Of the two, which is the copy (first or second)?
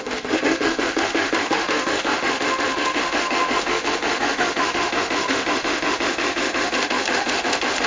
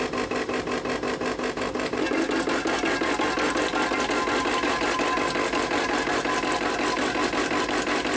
first